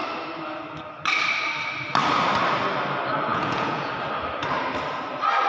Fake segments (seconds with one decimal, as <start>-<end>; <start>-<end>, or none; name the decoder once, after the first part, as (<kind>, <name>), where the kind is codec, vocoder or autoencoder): 3.3-3.9 (vocoder, Vocos)